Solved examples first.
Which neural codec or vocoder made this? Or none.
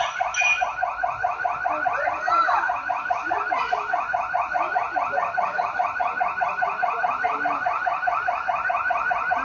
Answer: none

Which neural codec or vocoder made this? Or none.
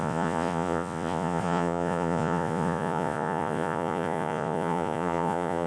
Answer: vocoder, Vocos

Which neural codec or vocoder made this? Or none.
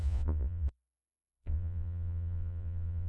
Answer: vocoder, Vocos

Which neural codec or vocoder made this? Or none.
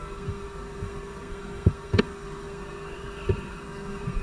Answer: codec, SNAC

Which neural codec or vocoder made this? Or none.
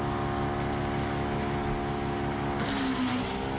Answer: none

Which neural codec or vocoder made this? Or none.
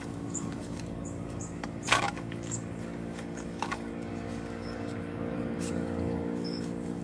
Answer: codec, DAC